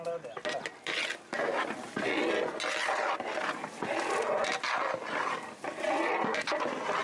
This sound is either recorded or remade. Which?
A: recorded